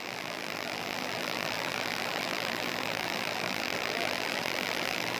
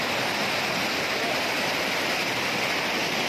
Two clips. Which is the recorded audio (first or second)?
second